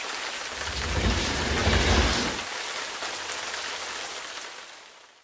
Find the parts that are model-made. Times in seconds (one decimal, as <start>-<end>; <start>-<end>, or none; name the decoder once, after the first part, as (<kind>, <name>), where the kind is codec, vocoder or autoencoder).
none